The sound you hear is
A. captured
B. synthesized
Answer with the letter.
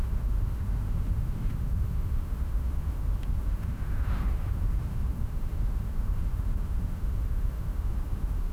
B